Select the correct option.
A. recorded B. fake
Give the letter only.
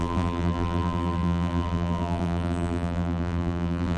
B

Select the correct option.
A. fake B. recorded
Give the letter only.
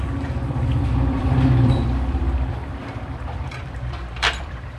A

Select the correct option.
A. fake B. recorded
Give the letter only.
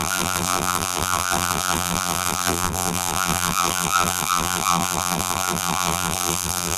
A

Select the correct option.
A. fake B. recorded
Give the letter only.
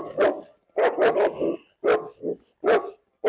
B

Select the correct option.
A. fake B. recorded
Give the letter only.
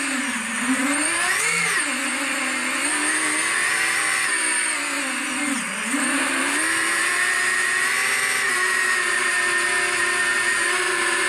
B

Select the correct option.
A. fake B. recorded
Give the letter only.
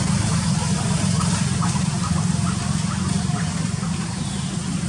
B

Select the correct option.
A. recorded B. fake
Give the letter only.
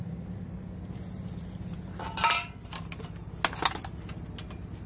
A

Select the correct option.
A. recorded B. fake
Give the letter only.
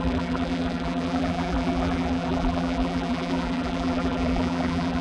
B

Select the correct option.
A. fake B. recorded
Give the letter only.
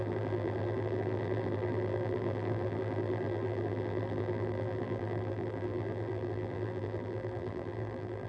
A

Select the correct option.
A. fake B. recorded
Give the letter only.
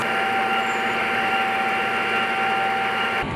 B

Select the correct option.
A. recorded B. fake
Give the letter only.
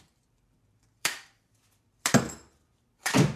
B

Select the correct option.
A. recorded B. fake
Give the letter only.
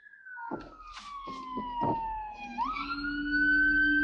A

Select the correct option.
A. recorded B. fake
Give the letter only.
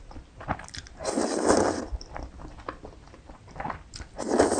A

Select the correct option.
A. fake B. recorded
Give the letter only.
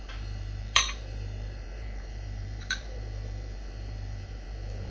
A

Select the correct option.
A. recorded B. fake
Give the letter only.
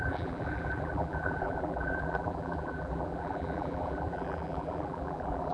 B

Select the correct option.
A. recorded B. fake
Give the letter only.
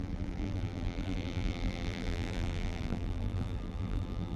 B